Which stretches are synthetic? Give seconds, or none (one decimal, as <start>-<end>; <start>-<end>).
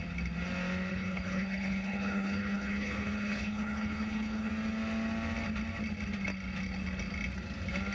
0.9-4.5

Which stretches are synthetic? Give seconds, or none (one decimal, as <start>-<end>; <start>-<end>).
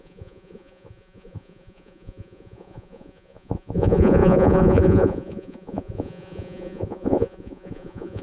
0.0-8.2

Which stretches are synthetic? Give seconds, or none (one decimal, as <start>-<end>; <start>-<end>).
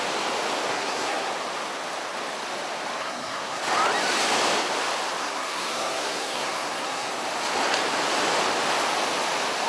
0.7-1.3; 3.0-3.6; 5.2-7.1